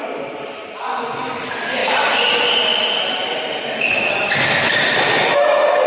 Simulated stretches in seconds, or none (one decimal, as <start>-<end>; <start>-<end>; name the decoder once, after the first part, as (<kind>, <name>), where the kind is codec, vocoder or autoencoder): none